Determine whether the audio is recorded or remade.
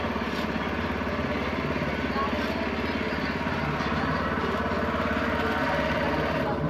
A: recorded